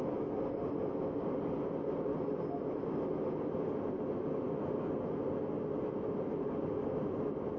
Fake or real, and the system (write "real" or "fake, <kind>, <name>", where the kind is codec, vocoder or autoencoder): real